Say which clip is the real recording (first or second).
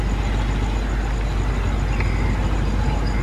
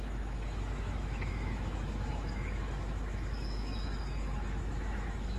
first